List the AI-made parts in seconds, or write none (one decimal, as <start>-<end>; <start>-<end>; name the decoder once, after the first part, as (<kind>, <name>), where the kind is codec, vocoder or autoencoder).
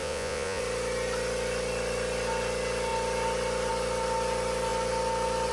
0.0-0.6 (vocoder, Vocos)